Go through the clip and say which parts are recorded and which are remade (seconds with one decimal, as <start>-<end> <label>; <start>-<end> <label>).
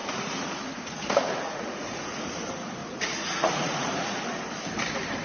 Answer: 0.0-2.3 remade; 2.3-2.8 recorded; 2.8-4.2 remade; 4.2-5.2 recorded